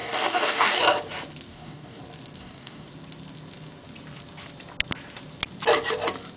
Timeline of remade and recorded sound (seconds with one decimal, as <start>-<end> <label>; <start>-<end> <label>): 0.0-0.8 remade; 0.8-1.5 recorded; 1.5-2.0 remade; 2.0-2.4 recorded; 2.4-2.9 remade; 2.9-6.4 recorded